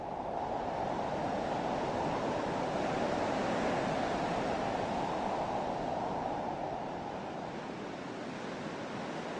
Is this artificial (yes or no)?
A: no